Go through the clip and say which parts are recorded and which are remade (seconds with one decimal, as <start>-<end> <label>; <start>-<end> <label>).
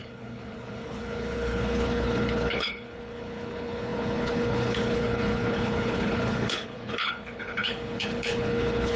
0.0-9.0 remade